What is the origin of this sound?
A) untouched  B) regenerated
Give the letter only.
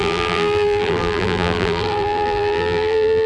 B